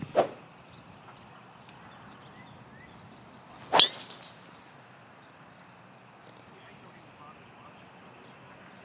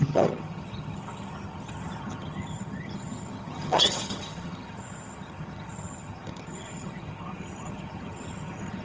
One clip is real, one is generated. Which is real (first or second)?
first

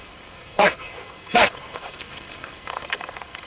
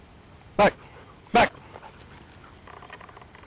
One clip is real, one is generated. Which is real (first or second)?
second